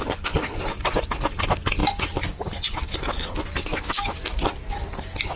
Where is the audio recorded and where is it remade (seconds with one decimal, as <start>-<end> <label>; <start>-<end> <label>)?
0.0-3.7 recorded; 3.7-4.4 remade; 4.4-5.4 recorded